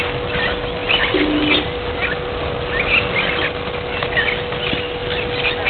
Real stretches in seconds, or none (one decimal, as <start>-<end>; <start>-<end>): 0.0-5.7